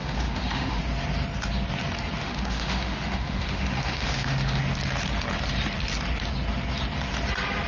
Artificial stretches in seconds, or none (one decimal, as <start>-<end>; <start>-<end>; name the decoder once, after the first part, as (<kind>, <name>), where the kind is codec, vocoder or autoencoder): 0.0-0.8 (autoencoder, DAC-VAE); 2.2-4.6